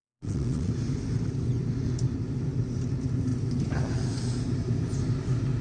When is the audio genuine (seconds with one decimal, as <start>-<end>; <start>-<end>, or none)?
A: 0.7-5.6